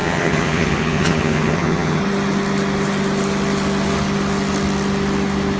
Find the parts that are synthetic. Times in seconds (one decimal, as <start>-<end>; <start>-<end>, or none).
0.0-2.0